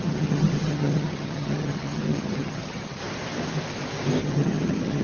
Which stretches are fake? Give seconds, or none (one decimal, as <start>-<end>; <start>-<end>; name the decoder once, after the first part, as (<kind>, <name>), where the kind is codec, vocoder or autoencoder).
0.0-3.0 (vocoder, HiFi-GAN); 4.2-5.0